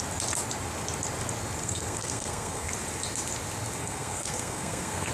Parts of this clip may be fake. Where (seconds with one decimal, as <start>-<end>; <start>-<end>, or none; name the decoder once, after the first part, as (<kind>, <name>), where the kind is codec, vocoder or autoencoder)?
1.6-2.7 (codec, SNAC); 3.8-5.1